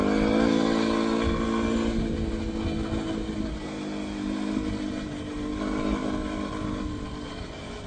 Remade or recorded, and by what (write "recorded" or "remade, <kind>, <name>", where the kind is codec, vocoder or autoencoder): recorded